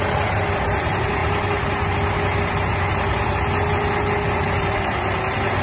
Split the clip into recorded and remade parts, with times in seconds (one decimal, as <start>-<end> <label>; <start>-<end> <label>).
0.0-5.6 recorded